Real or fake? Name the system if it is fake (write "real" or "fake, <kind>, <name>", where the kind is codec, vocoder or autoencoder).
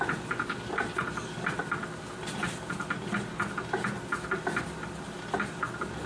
real